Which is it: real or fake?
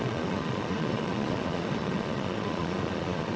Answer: fake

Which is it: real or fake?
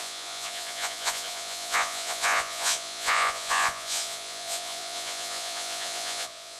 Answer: fake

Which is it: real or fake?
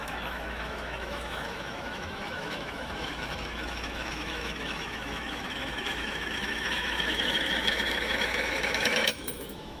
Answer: fake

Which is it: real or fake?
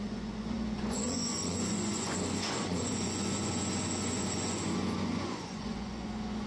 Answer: fake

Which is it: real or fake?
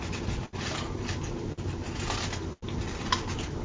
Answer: real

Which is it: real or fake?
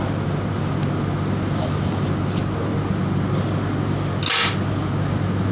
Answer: real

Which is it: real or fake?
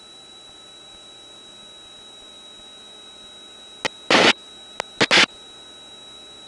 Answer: real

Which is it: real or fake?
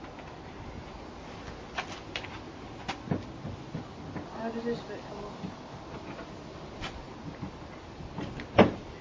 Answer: real